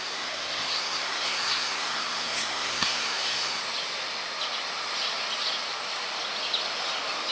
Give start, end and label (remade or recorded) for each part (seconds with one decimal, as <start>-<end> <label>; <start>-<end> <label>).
0.0-3.6 remade; 3.6-7.3 recorded